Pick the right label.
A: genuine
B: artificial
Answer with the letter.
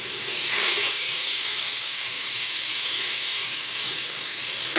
B